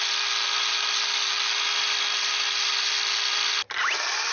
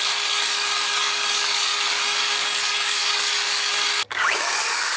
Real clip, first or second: first